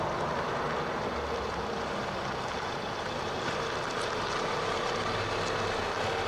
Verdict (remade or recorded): recorded